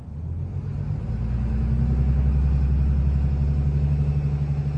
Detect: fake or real real